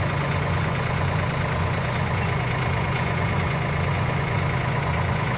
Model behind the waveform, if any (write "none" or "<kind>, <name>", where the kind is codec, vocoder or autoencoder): vocoder, Vocos